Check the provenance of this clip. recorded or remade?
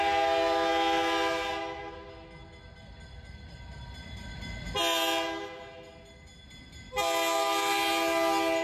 recorded